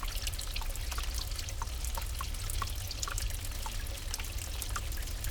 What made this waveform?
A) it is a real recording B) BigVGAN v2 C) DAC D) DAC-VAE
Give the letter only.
A